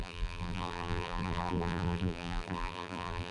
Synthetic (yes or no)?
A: yes